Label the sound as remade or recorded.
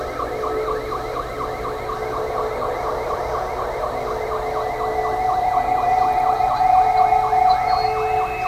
recorded